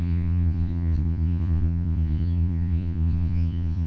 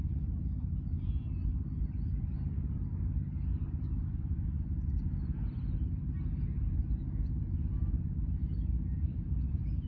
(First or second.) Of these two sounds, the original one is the second